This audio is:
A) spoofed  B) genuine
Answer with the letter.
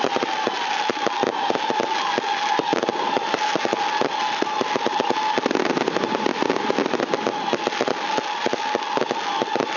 B